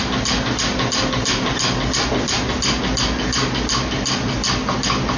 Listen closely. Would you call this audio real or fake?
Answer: real